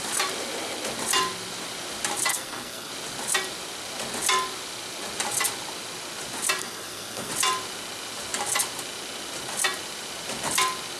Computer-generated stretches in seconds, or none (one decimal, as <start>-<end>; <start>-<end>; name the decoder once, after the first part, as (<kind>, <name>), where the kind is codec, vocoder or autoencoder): 2.3-2.9 (codec, SNAC); 6.6-7.3